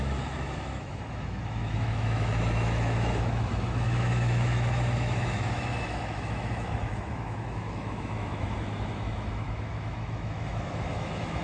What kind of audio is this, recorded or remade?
remade